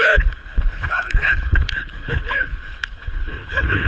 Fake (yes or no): yes